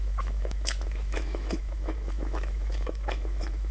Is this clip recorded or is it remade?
remade